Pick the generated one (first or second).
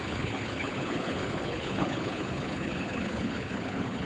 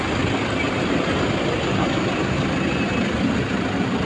first